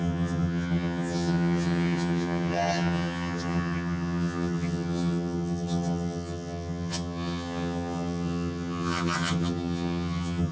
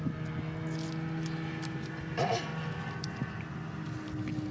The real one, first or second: second